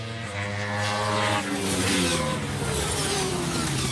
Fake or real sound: real